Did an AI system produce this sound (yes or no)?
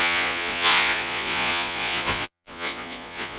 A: yes